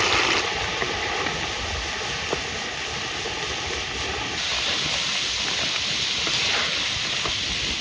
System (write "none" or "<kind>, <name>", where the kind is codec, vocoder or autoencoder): none